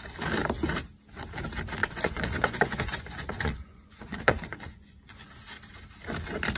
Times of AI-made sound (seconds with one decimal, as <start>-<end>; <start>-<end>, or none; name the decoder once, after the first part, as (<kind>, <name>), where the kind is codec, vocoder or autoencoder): 1.8-5.3 (vocoder, Vocos)